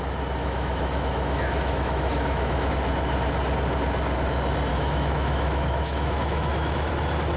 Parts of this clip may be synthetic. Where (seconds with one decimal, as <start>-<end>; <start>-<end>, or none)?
0.4-2.7; 4.7-6.9